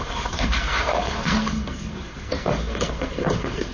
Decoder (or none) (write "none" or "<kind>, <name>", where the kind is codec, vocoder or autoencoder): codec, SNAC